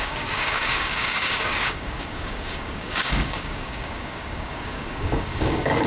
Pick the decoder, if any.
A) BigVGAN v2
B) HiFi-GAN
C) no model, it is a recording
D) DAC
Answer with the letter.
D